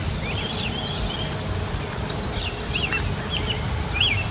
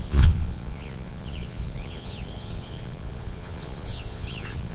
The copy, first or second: second